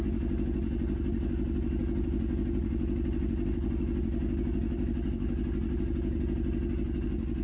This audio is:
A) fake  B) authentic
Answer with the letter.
B